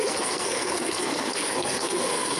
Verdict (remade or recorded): remade